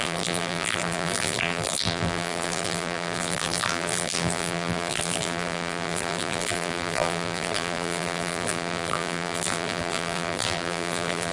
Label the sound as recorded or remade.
remade